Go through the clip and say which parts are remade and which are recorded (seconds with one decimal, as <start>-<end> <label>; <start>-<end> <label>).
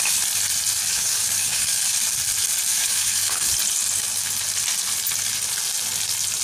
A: 0.0-0.9 recorded; 0.9-1.8 remade; 1.8-2.7 recorded; 2.7-3.5 remade; 3.5-6.4 recorded